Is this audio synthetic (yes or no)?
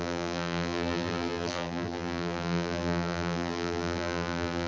yes